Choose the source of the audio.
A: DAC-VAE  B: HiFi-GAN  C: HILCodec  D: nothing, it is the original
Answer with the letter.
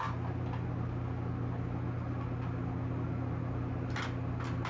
D